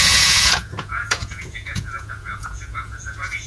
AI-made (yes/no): yes